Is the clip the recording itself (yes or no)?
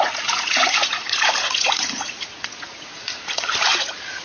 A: no